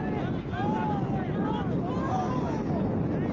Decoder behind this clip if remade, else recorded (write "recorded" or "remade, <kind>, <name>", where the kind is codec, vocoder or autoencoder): recorded